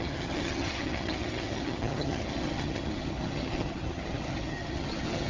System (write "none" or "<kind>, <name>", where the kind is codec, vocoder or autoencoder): vocoder, HiFi-GAN